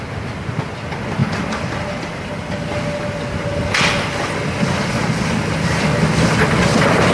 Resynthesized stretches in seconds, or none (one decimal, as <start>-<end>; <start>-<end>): none